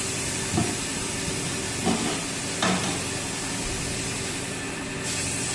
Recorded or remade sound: recorded